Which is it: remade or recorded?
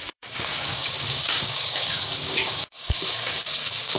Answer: remade